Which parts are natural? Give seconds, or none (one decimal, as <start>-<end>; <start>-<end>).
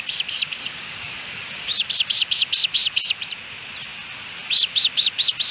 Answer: 0.0-0.6; 1.7-5.5